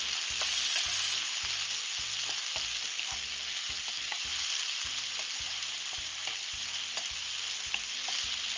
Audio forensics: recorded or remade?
recorded